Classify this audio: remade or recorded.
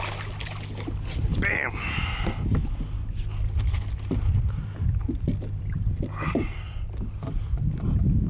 recorded